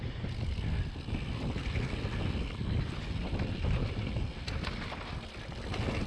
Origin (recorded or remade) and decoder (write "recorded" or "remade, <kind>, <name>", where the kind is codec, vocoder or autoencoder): recorded